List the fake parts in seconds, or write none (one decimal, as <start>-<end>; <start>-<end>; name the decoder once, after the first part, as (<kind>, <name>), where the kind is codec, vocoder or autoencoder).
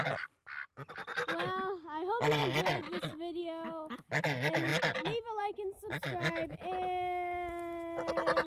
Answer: none